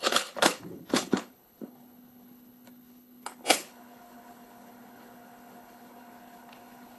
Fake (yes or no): yes